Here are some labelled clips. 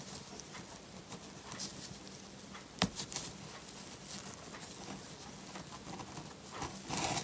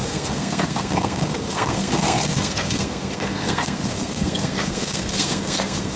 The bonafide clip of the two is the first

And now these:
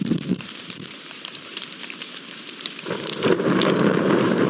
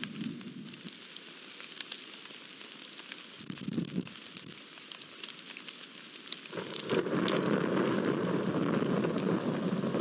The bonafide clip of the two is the second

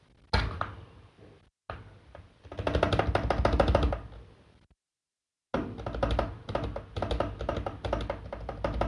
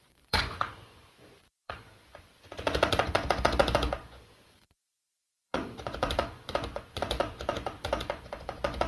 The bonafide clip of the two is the first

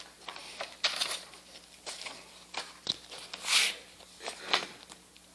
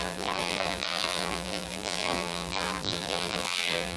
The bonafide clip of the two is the first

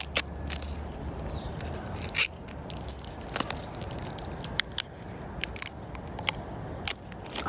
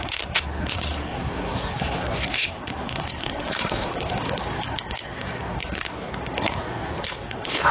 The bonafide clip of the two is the first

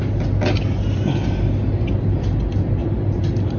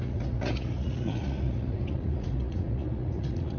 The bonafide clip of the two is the first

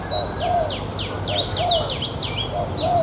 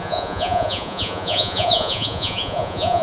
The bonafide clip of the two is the first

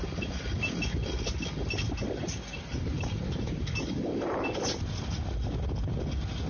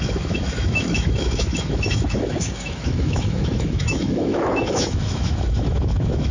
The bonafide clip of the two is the first